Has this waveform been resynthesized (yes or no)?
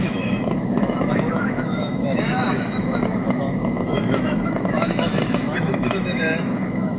yes